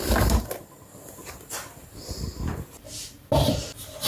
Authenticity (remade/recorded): remade